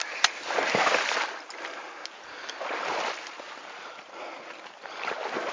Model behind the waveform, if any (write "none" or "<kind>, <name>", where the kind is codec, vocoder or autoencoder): none